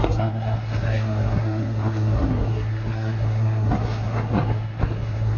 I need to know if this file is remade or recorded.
remade